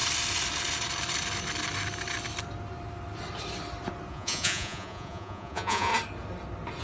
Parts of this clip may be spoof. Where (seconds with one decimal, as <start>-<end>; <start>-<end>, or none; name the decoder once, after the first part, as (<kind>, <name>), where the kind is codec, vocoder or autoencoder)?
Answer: 4.1-5.9 (vocoder, Vocos)